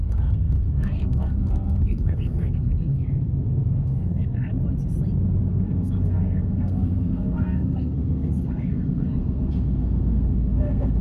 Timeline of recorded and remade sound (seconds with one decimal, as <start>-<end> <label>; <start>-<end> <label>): 0.0-4.5 remade; 4.5-5.5 recorded; 5.5-11.0 remade